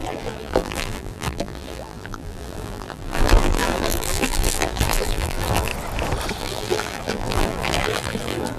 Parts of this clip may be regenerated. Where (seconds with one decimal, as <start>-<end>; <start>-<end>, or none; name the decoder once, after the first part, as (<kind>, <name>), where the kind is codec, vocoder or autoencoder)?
0.0-5.7 (vocoder, BigVGAN v2); 6.4-8.6